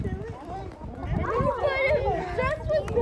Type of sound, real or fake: real